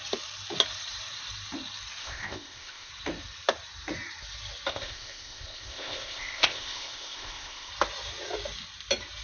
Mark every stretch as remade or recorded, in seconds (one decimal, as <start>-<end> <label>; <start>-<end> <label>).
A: 0.0-2.0 recorded; 2.0-2.9 remade; 2.9-4.7 recorded; 4.7-7.7 remade; 7.7-9.2 recorded